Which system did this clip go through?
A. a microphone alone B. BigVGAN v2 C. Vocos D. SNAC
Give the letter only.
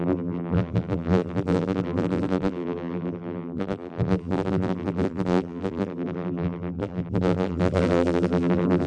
B